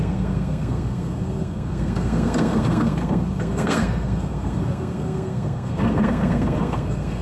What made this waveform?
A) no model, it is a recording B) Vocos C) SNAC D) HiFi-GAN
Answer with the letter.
C